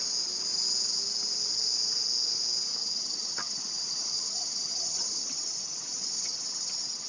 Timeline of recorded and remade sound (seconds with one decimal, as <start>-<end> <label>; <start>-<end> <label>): 0.0-2.8 recorded; 2.8-7.1 remade